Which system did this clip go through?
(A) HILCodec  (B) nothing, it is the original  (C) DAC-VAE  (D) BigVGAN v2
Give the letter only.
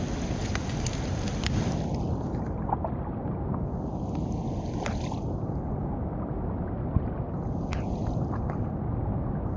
B